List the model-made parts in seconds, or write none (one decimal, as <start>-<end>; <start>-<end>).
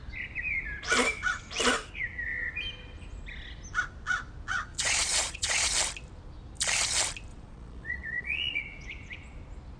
4.7-5.7; 7.3-8.6